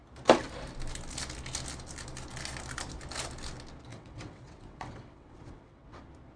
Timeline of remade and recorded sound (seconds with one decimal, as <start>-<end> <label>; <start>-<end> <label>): 0.0-3.9 recorded; 3.9-6.0 remade; 6.0-6.4 recorded